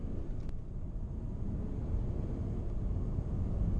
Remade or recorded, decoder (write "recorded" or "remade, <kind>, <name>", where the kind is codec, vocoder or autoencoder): recorded